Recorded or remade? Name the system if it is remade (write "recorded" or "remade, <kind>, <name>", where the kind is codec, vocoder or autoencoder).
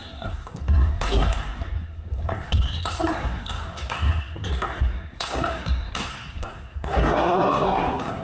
remade, codec, SNAC